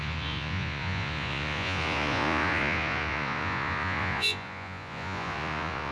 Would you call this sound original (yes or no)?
no